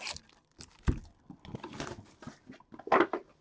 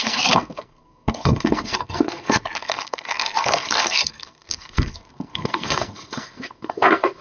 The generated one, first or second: second